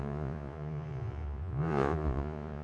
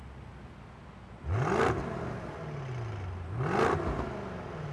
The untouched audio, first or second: second